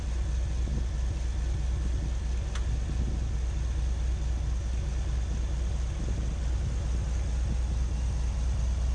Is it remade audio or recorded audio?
recorded